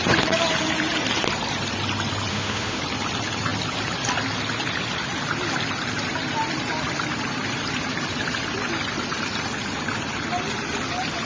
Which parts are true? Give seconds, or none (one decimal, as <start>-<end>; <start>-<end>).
0.0-2.3; 2.8-11.3

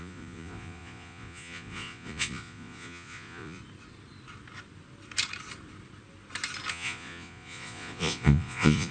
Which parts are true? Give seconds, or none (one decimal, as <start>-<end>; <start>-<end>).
3.6-6.7

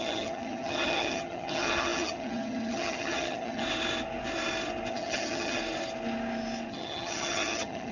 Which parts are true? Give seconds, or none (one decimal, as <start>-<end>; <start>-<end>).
3.6-4.9; 5.6-6.7

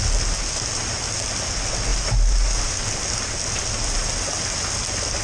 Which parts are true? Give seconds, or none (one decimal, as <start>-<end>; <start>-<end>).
0.0-5.2

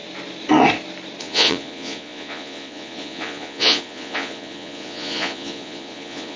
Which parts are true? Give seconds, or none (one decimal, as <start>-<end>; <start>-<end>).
0.0-1.2